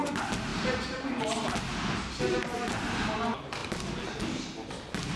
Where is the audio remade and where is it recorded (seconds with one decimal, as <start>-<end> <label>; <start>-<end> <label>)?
0.0-5.2 recorded